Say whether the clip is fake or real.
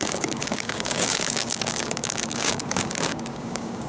fake